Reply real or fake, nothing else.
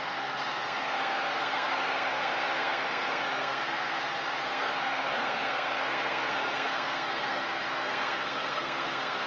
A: fake